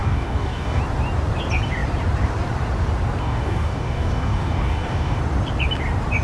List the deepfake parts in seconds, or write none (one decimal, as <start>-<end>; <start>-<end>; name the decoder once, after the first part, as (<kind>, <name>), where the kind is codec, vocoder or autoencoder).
0.0-0.8 (codec, DAC); 3.2-5.2